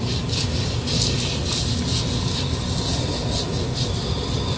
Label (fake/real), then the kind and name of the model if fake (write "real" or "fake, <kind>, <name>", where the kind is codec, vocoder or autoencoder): real